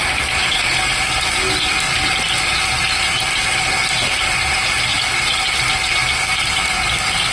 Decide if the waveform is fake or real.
real